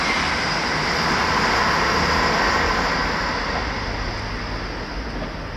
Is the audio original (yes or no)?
yes